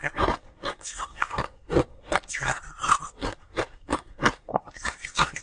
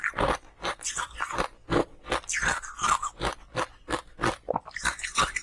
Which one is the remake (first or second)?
first